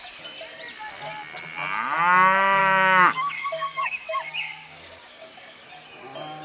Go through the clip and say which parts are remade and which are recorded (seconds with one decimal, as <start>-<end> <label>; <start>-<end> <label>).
0.0-2.6 recorded; 2.6-5.7 remade; 5.7-6.4 recorded